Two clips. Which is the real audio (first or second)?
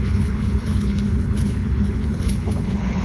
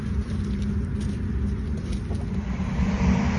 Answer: second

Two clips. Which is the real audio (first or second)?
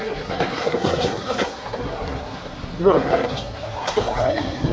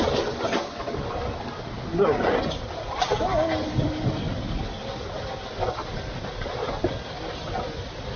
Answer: second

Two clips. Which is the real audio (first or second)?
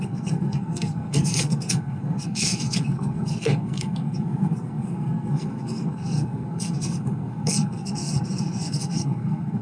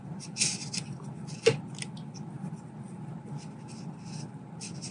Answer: second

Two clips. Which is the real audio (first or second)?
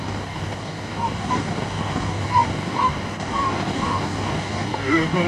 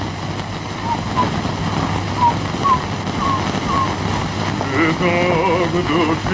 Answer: second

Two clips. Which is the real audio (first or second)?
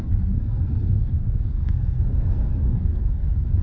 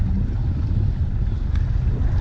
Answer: second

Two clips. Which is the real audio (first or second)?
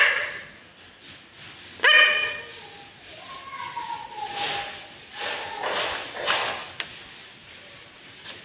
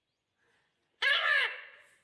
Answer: first